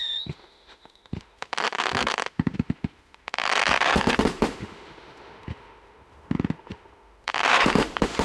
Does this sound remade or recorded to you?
remade